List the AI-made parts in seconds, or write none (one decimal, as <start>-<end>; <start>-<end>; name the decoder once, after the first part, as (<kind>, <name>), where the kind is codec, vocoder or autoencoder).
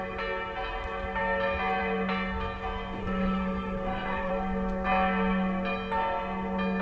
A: 3.0-4.3 (codec, SNAC)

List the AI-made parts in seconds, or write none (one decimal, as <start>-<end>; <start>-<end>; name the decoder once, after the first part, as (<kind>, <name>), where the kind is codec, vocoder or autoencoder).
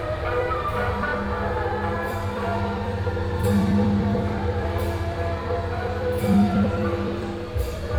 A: 0.0-1.1 (vocoder, BigVGAN v2); 1.9-8.0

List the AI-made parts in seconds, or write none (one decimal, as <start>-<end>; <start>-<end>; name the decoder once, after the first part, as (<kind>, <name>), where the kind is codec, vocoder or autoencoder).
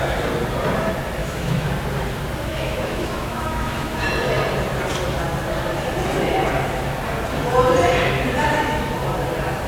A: 1.2-1.7 (autoencoder, DAC-VAE); 2.5-4.1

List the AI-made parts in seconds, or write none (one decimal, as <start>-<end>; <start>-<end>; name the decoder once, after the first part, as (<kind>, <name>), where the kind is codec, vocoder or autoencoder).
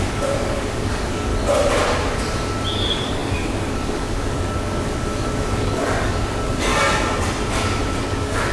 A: 0.0-1.3 (codec, DAC); 2.7-6.7; 8.0-8.5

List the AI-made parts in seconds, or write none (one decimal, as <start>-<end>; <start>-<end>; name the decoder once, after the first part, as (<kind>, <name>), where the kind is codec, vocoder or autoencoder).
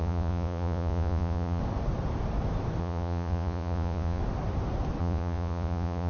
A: 0.0-1.6 (vocoder, Vocos); 2.8-4.2; 5.0-6.1